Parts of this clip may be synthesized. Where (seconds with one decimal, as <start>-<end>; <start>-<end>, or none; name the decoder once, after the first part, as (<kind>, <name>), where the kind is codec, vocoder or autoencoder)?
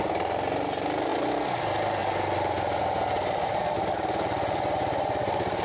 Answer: none